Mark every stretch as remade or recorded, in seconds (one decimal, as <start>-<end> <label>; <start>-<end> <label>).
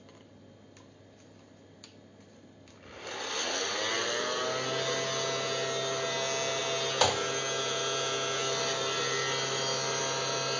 0.0-10.6 recorded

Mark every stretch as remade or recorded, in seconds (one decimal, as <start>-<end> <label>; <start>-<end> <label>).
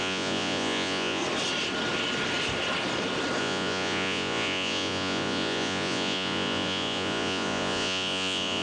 0.0-1.2 remade; 1.2-3.4 recorded; 3.4-8.6 remade